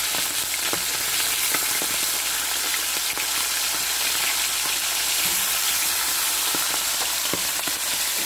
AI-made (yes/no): yes